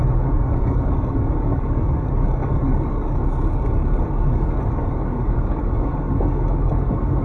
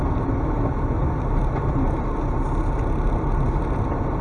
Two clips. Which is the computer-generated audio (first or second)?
first